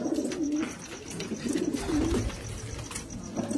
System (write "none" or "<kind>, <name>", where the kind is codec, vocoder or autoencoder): none